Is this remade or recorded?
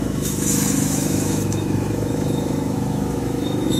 remade